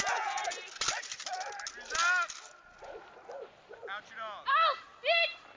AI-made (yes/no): no